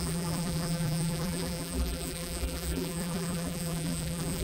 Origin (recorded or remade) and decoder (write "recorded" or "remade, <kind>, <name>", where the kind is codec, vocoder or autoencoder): remade, vocoder, BigVGAN v2